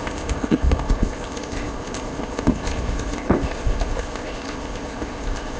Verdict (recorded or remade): remade